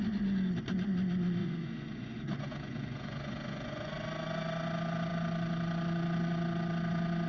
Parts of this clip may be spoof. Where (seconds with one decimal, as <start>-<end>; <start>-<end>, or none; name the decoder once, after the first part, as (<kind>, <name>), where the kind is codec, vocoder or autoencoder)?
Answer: 1.4-3.9 (vocoder, Vocos)